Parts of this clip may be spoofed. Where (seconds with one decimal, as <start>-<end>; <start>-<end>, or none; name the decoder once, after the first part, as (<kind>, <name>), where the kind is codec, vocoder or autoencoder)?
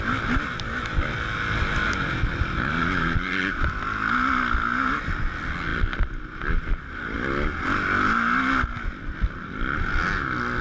none